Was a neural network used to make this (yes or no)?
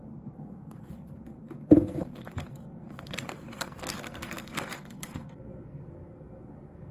yes